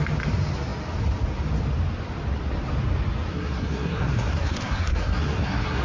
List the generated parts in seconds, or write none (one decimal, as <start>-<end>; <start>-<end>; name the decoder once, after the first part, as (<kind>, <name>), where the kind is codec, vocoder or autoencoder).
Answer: 3.3-5.8 (codec, SNAC)